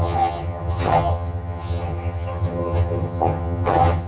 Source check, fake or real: fake